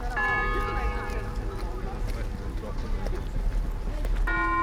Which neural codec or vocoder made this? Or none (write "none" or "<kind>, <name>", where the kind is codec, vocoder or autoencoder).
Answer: none